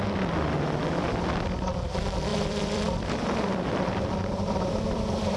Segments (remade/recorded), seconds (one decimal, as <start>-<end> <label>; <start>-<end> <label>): 0.0-2.3 recorded; 2.3-5.4 remade